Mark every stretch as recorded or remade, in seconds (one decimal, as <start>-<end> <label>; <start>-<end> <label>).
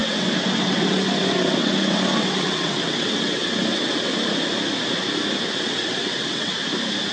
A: 0.0-4.1 remade; 4.1-5.6 recorded; 5.6-6.5 remade; 6.5-7.1 recorded